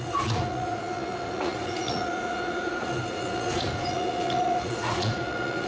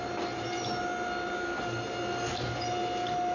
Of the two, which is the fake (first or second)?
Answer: first